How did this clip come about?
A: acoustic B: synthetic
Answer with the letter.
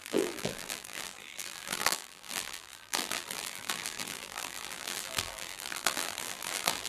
B